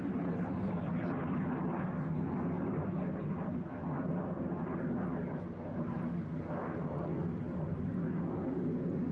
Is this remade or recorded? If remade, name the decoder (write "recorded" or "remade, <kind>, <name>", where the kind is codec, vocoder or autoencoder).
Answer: recorded